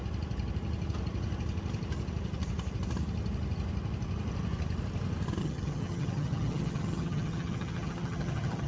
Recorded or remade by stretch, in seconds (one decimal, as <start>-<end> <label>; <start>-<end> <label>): 0.0-5.4 recorded; 5.4-8.7 remade